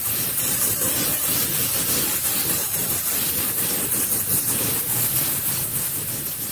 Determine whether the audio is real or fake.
real